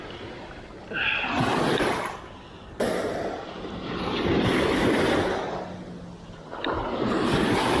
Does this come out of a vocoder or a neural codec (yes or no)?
no